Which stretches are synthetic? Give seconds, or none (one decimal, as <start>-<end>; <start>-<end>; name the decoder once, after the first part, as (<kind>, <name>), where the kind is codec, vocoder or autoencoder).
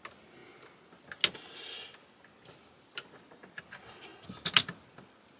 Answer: none